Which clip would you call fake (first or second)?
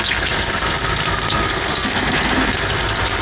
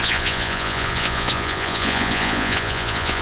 second